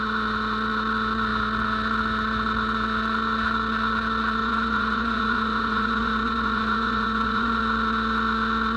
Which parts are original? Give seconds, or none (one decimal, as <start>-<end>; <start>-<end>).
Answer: 0.0-4.4; 7.6-8.8

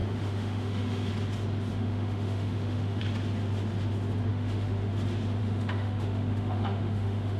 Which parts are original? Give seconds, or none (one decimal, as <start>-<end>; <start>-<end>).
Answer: 1.1-1.7; 3.0-4.3; 4.9-5.4

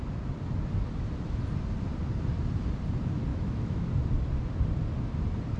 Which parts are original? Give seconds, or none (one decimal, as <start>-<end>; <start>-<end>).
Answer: 0.0-3.3; 3.9-5.6

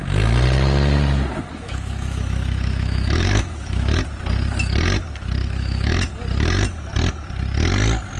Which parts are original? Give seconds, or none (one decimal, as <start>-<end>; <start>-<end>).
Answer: 0.0-1.5; 4.0-5.4; 6.1-8.2

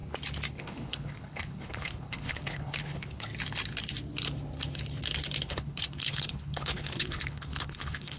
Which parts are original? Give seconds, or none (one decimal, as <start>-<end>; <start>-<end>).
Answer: 0.0-0.6; 3.3-5.5